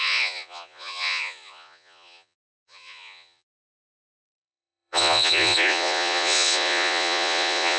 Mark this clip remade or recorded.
remade